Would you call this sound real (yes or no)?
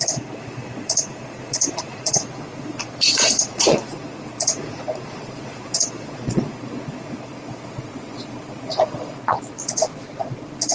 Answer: no